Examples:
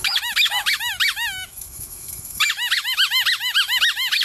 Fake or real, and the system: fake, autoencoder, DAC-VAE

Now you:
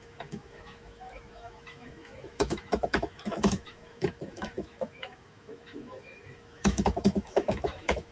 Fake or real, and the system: fake, autoencoder, DAC-VAE